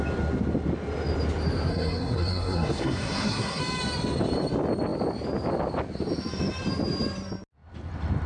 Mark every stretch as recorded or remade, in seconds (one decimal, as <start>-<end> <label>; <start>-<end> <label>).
0.0-1.7 recorded; 1.7-3.6 remade; 3.6-8.3 recorded